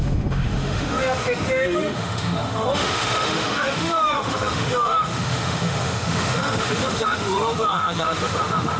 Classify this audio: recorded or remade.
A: remade